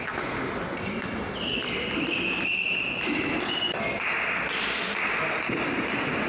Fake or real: real